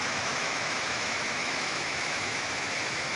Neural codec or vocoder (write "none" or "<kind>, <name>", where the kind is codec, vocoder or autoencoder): autoencoder, DAC-VAE